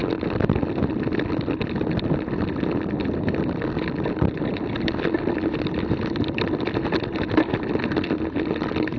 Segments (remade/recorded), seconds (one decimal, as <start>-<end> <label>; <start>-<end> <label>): 0.0-9.0 recorded